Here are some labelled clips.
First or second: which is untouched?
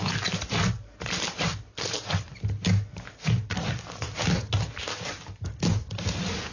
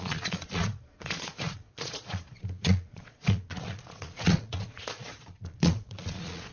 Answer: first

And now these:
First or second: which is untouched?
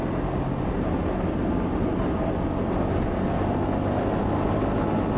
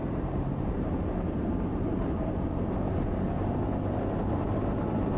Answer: first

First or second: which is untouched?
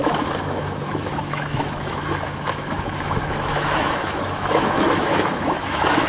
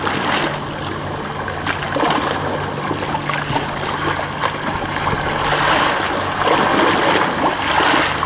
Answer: second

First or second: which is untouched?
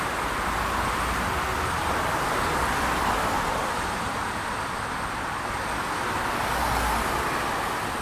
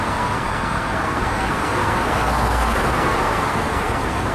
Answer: first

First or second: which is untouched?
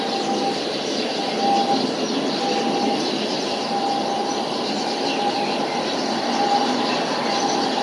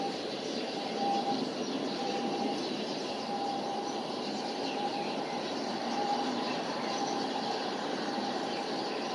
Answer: first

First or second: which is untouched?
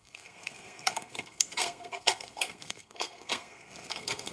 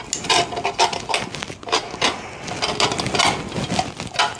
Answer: second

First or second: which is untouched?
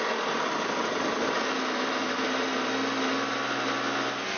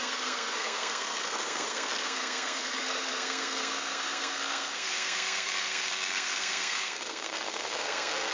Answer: first